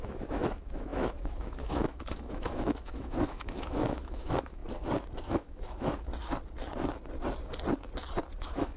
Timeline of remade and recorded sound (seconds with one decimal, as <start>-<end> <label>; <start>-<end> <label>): 0.0-4.6 remade; 4.6-5.2 recorded; 5.2-6.1 remade; 6.1-8.4 recorded; 8.4-8.8 remade